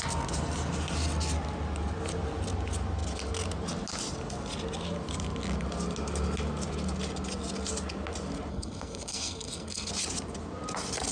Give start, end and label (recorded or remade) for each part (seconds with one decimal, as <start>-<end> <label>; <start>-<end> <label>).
0.0-8.5 recorded; 8.5-9.9 remade; 9.9-11.1 recorded